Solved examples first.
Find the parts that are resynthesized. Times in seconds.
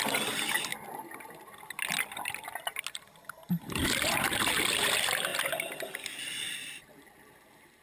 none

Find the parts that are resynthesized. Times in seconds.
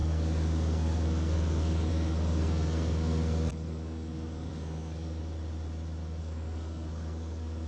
0.0-5.2 (codec, SNAC); 6.2-7.7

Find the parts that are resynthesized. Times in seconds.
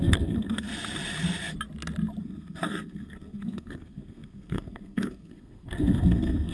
0.0-0.7 (codec, SNAC); 2.2-6.5